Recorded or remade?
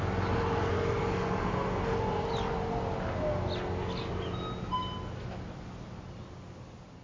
recorded